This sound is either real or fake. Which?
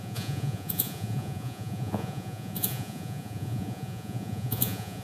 fake